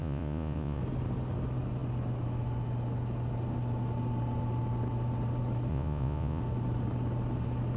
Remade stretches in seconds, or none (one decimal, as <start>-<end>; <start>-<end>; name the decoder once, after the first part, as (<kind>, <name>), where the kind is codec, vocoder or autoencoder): 0.0-0.8 (vocoder, Vocos); 5.7-6.4